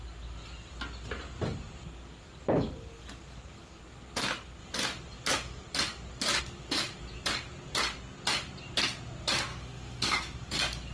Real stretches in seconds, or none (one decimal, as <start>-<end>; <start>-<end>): 0.0-2.4; 3.8-9.5; 10.5-10.9